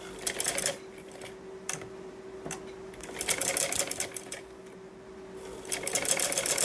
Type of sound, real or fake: real